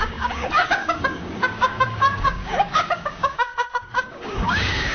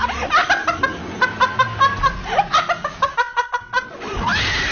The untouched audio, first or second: second